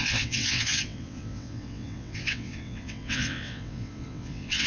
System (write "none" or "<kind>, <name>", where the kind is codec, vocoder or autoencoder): vocoder, WaveNeXt